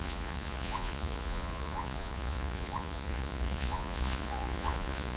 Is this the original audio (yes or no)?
no